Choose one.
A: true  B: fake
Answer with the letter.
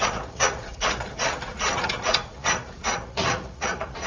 B